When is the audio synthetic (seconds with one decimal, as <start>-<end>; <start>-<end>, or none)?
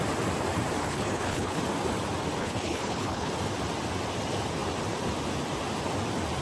0.8-1.6; 2.4-3.3